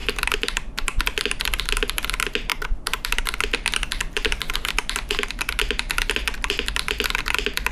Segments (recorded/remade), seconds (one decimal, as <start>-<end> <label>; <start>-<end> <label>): 0.0-1.0 remade; 1.0-2.5 recorded; 2.5-3.2 remade; 3.2-4.0 recorded; 4.0-5.5 remade; 5.5-7.7 recorded